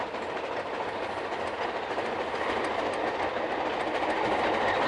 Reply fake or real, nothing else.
real